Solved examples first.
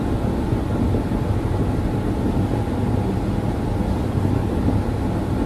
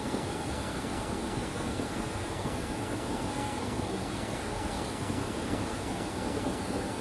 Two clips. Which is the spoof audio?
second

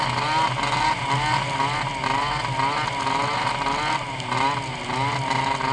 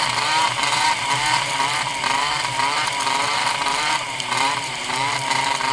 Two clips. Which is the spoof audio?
second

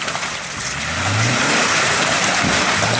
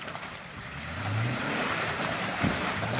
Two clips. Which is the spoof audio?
second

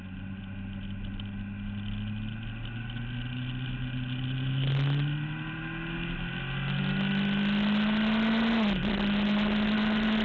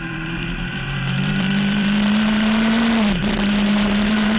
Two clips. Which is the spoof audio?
second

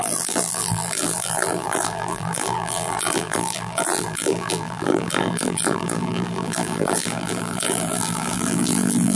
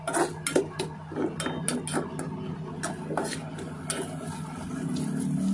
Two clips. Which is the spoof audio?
first